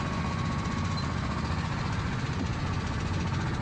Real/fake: fake